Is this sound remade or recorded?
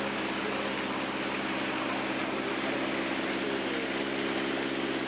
recorded